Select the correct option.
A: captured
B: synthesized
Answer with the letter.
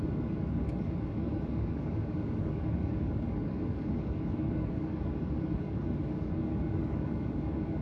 B